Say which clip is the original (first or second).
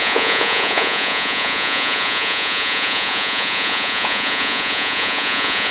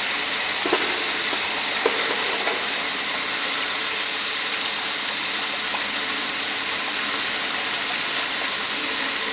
second